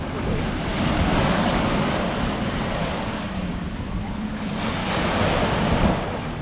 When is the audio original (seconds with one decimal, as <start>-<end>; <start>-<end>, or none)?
0.0-0.7; 3.5-4.8; 5.4-6.4